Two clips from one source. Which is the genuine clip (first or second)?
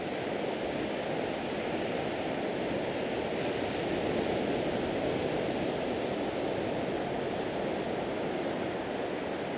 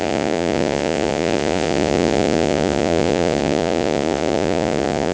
first